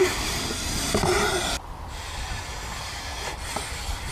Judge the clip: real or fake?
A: real